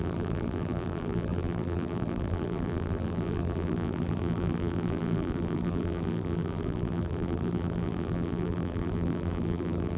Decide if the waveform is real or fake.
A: fake